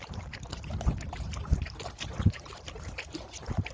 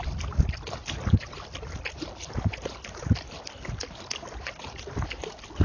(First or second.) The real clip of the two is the second